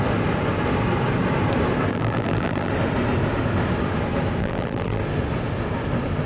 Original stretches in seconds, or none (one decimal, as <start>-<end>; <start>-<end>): 0.0-1.9; 2.7-4.4; 5.0-6.3